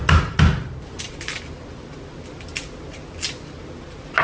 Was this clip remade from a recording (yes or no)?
no